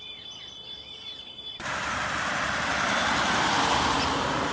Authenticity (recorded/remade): remade